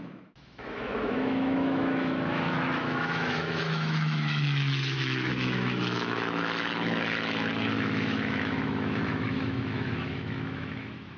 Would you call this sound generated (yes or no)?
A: yes